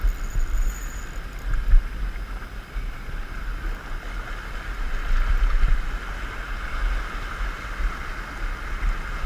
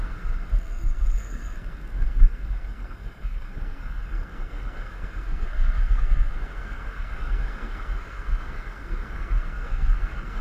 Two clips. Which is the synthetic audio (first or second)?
second